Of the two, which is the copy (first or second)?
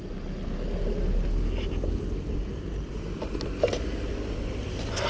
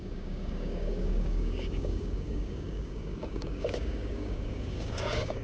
second